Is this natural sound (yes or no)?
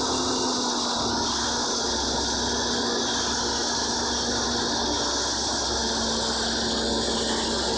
yes